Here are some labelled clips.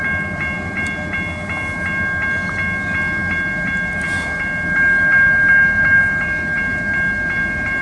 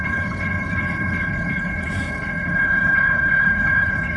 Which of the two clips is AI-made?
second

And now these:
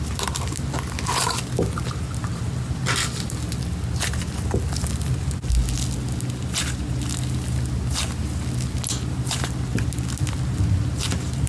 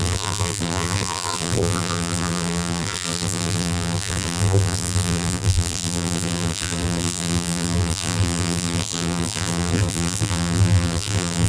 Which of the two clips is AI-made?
second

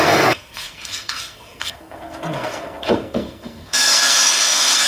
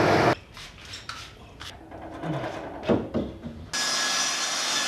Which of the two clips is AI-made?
first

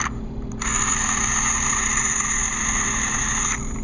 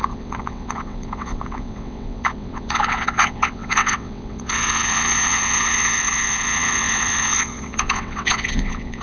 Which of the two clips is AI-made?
second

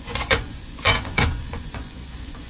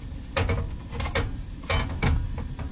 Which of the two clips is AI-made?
first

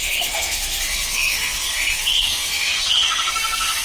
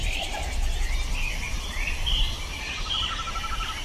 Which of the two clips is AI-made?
first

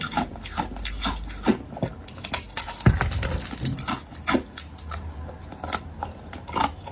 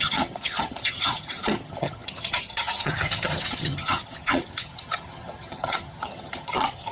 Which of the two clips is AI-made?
second